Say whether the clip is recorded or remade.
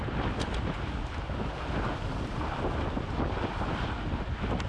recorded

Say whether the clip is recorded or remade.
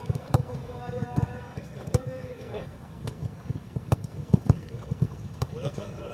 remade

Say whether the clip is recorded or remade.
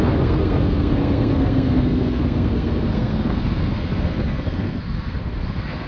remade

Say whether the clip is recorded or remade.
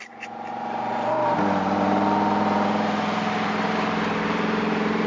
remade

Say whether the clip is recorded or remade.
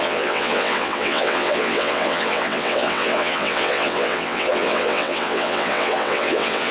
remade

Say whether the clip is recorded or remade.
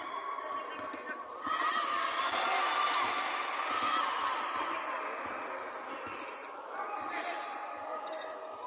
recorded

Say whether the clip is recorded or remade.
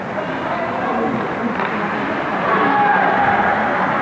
recorded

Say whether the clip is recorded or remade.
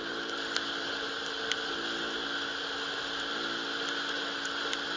recorded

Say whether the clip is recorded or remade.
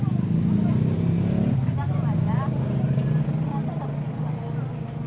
recorded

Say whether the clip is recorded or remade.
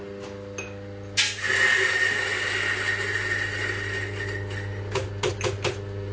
recorded